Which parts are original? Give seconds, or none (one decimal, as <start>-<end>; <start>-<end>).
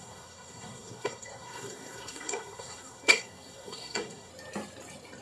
4.3-5.2